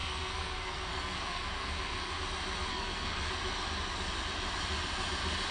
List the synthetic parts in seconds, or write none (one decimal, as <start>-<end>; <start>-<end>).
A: 0.0-2.1; 2.7-3.3